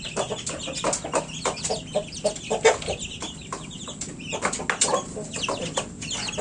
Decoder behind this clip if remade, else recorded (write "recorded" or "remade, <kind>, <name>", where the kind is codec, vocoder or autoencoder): recorded